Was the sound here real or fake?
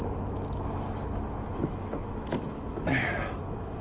fake